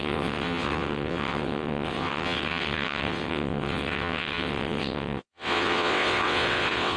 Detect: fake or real fake